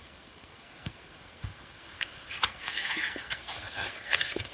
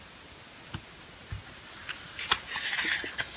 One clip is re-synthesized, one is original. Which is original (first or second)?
second